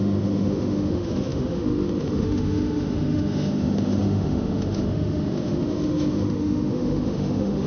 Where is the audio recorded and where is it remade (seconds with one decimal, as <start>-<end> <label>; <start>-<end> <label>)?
0.0-7.7 remade